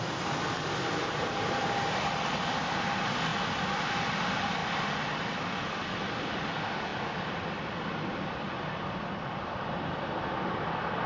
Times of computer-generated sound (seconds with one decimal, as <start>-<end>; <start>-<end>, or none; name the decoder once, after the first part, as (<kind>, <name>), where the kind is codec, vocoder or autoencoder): none

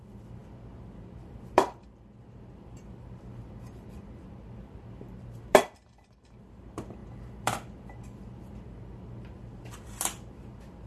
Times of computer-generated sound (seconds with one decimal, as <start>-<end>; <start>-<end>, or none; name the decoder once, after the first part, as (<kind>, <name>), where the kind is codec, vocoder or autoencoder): 0.0-10.9 (vocoder, BigVGAN v2)

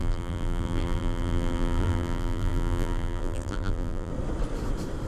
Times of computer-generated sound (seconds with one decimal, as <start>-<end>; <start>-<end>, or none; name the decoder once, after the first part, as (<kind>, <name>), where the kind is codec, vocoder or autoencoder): 0.0-4.1 (vocoder, BigVGAN v2)

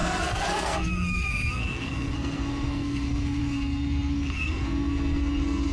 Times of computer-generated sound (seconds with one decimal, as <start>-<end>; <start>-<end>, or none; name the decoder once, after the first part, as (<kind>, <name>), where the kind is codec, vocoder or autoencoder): 0.0-5.7 (codec, SNAC)

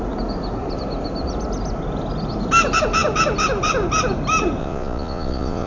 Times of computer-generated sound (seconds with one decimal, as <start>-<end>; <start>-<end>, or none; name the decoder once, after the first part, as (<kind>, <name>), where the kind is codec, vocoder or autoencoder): 4.6-5.7 (vocoder, Vocos)

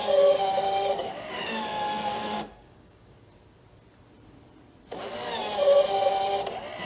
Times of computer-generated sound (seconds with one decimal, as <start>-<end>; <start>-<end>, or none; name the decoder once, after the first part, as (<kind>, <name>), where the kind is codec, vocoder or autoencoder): 0.0-3.2 (codec, DAC)

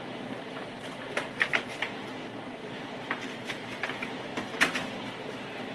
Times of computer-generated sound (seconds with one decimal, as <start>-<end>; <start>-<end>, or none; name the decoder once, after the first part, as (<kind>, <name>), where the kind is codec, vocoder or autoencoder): 0.0-1.5 (vocoder, BigVGAN v2); 2.4-4.3; 5.0-5.7